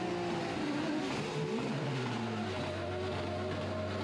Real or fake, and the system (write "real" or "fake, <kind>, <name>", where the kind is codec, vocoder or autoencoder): real